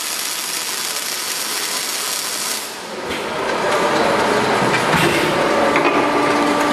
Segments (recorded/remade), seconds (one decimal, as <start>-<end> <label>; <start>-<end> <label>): 0.0-6.7 recorded